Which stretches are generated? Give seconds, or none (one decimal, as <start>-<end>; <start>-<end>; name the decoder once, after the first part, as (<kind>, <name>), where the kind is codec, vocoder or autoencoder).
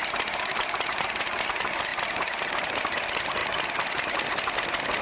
none